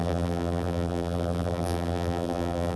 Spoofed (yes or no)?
yes